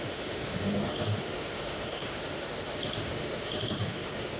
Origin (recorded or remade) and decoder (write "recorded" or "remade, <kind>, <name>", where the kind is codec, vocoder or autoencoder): remade, autoencoder, DAC-VAE